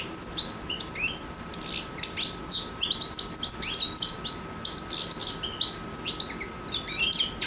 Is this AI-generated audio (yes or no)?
no